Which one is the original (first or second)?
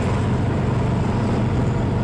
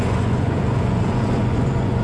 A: first